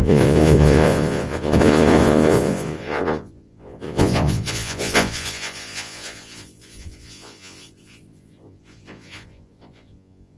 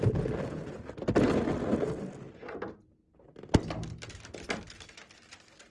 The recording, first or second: second